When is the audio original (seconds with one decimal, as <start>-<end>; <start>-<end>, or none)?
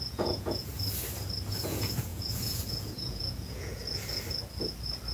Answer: 0.7-1.5; 3.8-5.1